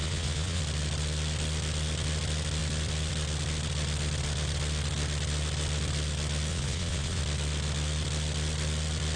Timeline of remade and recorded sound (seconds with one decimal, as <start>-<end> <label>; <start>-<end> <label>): 0.0-0.6 remade; 0.6-6.5 recorded; 6.5-7.2 remade; 7.2-9.2 recorded